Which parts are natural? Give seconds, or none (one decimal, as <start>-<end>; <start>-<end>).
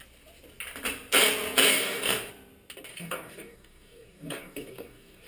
0.0-1.7; 2.3-2.9